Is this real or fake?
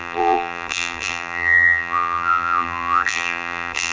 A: fake